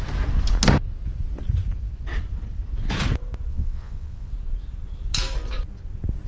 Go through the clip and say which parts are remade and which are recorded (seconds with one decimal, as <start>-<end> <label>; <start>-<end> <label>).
0.0-3.5 recorded; 3.5-4.3 remade; 4.3-6.3 recorded